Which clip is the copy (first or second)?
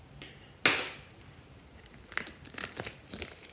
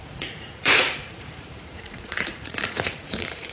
second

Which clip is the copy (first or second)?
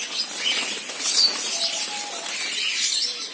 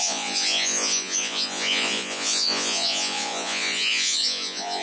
second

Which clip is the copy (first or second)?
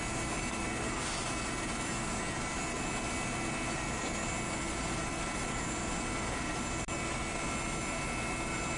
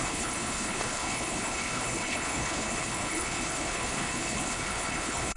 second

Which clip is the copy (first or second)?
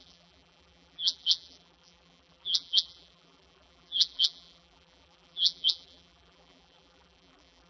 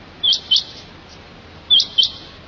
first